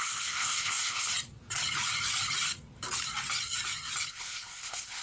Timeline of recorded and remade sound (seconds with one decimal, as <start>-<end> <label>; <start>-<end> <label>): 0.0-1.1 remade; 1.1-4.1 recorded; 4.1-5.0 remade